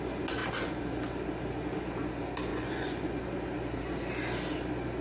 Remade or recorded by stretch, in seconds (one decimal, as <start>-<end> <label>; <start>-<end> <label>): 0.0-2.5 recorded; 2.5-3.2 remade; 3.2-5.0 recorded

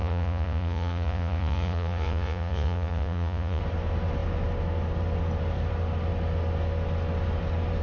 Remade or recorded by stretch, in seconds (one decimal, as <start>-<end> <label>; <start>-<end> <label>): 0.0-3.6 remade; 3.6-7.8 recorded

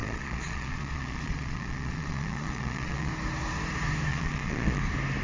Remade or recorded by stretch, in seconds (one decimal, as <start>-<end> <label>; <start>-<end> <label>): 0.0-3.1 remade; 3.1-4.1 recorded; 4.1-4.8 remade; 4.8-5.2 recorded

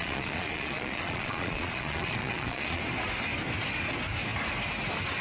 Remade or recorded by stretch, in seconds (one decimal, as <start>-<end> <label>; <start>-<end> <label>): 0.0-2.8 remade; 2.8-5.2 recorded